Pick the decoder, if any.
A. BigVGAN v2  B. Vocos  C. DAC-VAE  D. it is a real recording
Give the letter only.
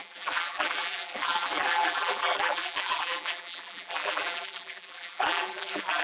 A